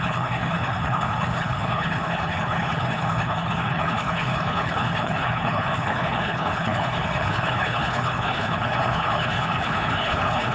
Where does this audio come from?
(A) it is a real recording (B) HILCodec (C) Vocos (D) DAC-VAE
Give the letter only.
B